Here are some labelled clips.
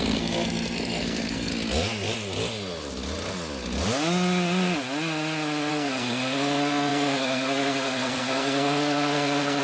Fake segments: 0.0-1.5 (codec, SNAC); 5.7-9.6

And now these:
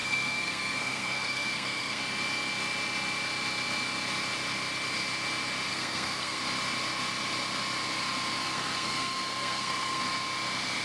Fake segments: 0.0-2.0 (codec, SNAC); 5.7-6.4; 8.4-10.0

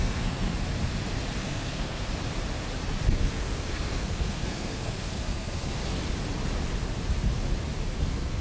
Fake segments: 0.0-0.5 (codec, SNAC); 1.4-2.1; 3.1-5.8; 8.0-8.4

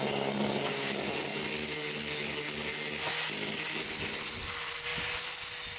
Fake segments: none

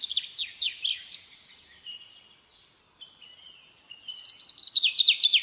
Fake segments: none